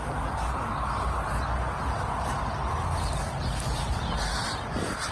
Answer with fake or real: real